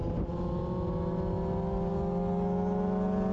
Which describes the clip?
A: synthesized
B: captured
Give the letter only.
B